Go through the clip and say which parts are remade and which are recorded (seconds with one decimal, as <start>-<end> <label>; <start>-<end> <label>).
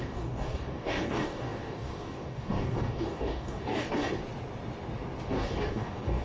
0.0-4.0 remade; 4.0-5.3 recorded; 5.3-6.2 remade